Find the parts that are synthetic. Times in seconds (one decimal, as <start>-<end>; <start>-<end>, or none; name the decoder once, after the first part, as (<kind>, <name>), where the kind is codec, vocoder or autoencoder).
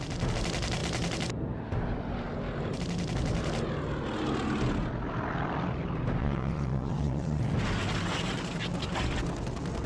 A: 6.2-7.4 (vocoder, Vocos)